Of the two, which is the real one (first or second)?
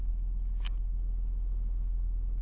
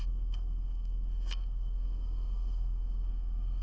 first